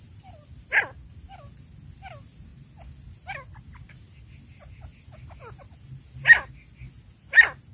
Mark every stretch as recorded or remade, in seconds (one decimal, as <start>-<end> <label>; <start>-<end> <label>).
0.0-7.7 recorded